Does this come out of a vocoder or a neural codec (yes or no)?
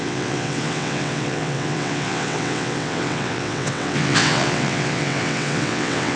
yes